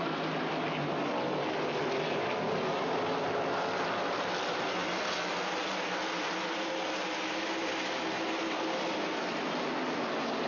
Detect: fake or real real